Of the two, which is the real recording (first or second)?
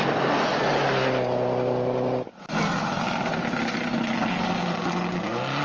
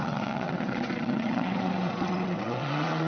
first